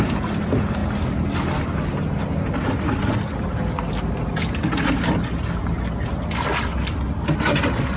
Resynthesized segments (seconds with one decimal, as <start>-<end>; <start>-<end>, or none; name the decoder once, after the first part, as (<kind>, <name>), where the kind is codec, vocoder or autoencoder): none